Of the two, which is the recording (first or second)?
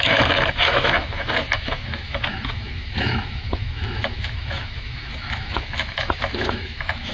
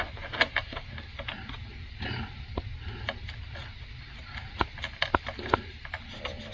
second